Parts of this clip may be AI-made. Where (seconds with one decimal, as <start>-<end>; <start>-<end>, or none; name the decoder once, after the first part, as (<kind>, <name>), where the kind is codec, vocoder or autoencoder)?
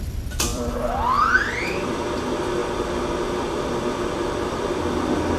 0.5-2.0 (vocoder, BigVGAN v2); 2.6-4.8